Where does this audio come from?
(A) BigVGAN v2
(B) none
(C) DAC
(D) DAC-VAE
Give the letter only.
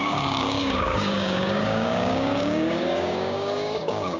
C